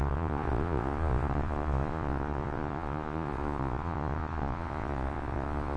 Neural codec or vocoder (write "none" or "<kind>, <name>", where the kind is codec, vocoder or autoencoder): vocoder, Vocos